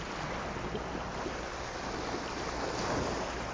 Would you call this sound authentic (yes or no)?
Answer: yes